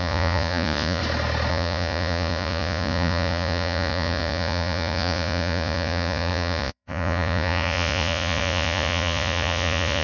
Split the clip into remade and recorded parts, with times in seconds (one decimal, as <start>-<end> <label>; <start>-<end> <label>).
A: 0.0-1.0 remade; 1.0-1.5 recorded; 1.5-10.0 remade